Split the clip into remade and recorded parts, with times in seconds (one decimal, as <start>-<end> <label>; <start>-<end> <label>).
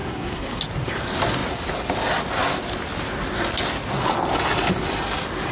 0.0-0.6 remade; 0.6-5.5 recorded